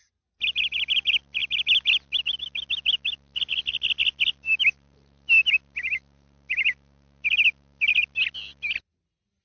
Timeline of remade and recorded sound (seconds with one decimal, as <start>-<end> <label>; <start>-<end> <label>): 0.0-9.4 recorded